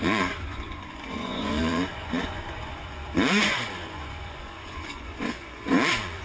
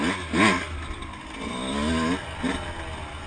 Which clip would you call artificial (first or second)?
first